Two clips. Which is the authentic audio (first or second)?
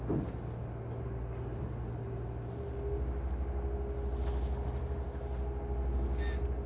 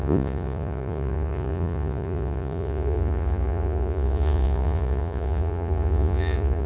first